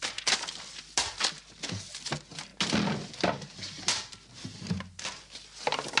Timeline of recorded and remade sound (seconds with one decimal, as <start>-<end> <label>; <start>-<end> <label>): 0.0-6.0 recorded